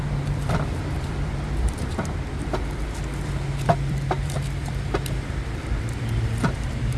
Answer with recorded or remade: remade